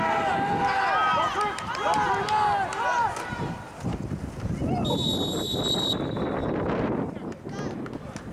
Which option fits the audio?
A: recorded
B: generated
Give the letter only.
A